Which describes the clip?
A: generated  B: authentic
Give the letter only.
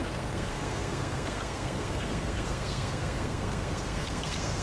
A